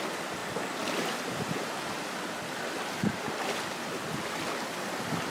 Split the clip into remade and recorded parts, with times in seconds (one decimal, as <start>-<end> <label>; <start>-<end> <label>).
0.0-5.3 recorded